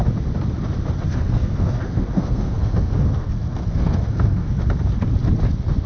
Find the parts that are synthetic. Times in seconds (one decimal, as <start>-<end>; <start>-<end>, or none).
1.1-4.6